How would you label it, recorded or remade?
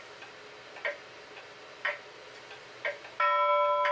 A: recorded